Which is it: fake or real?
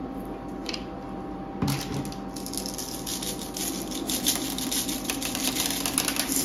real